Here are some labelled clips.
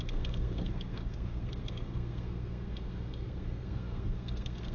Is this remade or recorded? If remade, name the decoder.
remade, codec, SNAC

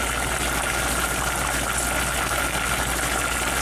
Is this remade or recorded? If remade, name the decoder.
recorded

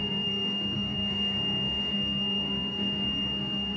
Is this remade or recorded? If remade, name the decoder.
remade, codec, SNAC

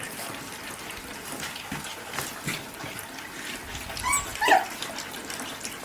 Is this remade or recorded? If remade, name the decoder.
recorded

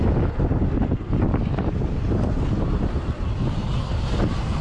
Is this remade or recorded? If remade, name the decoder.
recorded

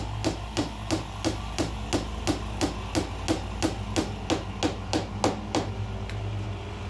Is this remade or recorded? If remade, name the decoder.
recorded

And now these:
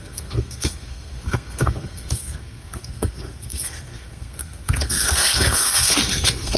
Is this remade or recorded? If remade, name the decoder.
remade, codec, SNAC